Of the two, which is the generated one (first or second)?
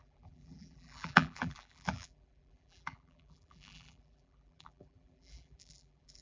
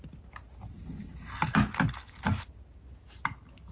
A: first